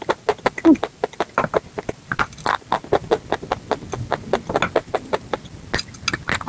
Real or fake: real